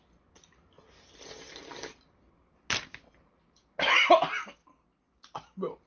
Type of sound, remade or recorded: recorded